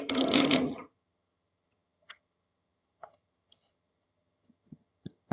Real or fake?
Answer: fake